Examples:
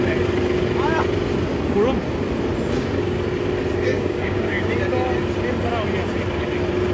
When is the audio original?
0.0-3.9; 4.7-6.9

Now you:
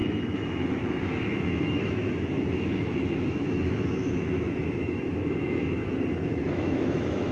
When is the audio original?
5.8-6.3

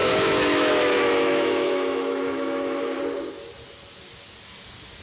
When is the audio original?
3.0-5.0